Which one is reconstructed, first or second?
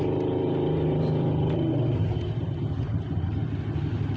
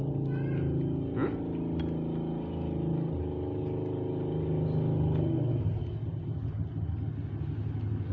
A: first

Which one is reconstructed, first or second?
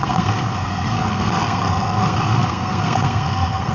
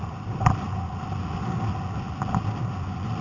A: first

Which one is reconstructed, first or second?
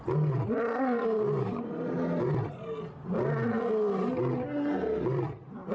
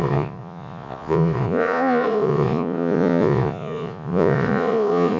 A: second